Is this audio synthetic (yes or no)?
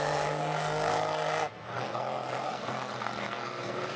yes